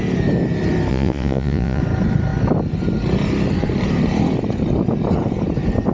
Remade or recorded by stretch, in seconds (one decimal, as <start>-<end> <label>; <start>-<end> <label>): 0.0-0.9 recorded; 0.9-1.8 remade; 1.8-5.9 recorded